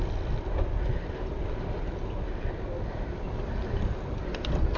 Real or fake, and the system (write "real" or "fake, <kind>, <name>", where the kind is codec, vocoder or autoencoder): real